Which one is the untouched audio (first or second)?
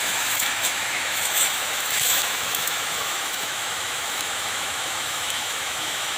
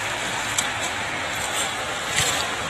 second